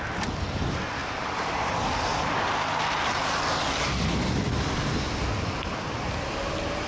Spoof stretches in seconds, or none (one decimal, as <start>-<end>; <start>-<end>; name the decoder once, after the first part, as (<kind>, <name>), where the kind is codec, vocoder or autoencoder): 1.0-1.9 (vocoder, BigVGAN v2)